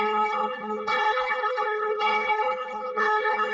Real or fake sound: fake